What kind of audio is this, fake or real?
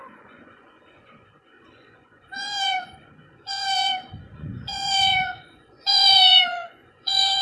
fake